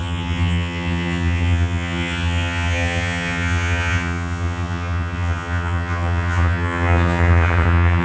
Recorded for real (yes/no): no